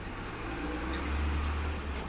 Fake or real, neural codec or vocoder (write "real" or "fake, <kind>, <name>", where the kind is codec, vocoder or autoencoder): real